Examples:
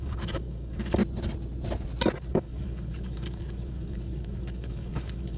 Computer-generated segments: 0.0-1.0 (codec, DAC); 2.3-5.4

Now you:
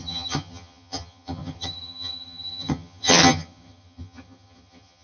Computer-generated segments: 0.0-5.0 (vocoder, HiFi-GAN)

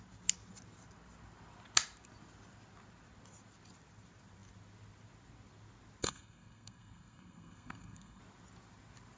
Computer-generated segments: 6.0-8.2 (codec, SNAC)

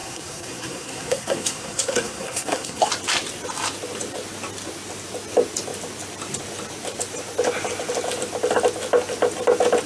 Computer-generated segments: 0.0-2.9 (codec, SNAC)

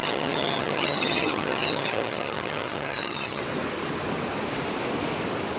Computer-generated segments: 0.0-3.4 (vocoder, HiFi-GAN)

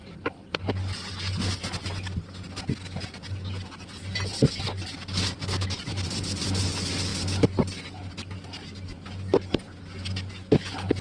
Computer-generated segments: 0.0-0.7 (vocoder, BigVGAN v2); 5.8-6.6